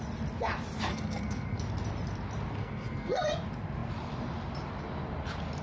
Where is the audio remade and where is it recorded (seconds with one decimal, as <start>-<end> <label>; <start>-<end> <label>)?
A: 0.0-0.9 recorded; 0.9-1.6 remade; 1.6-2.6 recorded; 2.6-3.2 remade; 3.2-5.6 recorded

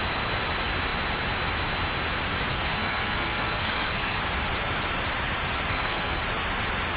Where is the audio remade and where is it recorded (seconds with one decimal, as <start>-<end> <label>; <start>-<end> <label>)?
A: 0.0-2.5 recorded; 2.5-4.2 remade; 4.2-5.7 recorded; 5.7-6.2 remade; 6.2-7.0 recorded

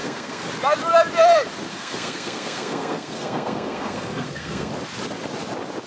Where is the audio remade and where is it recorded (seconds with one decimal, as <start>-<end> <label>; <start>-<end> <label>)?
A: 0.0-0.5 remade; 0.5-1.7 recorded; 1.7-4.7 remade; 4.7-5.9 recorded

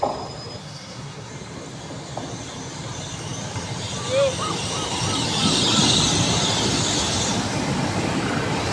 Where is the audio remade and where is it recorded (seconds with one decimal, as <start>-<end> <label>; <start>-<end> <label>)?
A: 0.0-0.6 recorded; 0.6-1.3 remade; 1.3-8.7 recorded

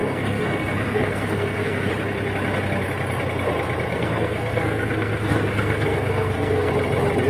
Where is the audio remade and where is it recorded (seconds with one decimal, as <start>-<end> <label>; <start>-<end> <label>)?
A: 0.0-1.9 remade; 1.9-3.9 recorded; 3.9-6.7 remade; 6.7-7.3 recorded

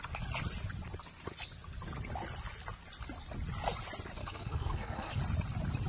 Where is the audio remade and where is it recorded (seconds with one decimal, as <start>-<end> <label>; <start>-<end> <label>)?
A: 0.0-4.2 recorded; 4.2-5.2 remade; 5.2-5.9 recorded

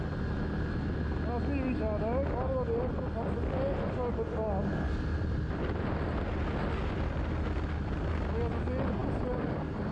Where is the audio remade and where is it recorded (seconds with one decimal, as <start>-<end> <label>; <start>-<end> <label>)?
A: 0.0-9.9 recorded